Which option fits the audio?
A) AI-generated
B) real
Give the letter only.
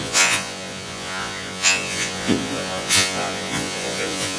A